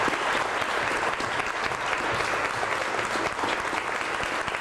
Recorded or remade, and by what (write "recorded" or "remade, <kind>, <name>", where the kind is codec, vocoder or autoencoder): recorded